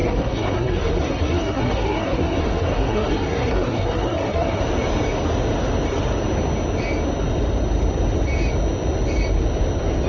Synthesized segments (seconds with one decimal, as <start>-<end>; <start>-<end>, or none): 0.0-4.6